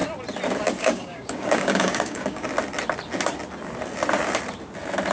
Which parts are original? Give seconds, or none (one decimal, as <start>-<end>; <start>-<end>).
0.0-0.8; 2.5-5.1